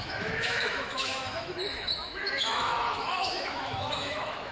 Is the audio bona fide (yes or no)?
no